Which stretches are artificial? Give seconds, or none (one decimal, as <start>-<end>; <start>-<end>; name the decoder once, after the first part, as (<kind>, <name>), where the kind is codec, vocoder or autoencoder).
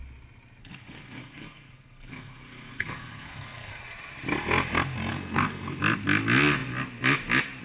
0.6-3.7 (codec, SNAC); 5.1-5.8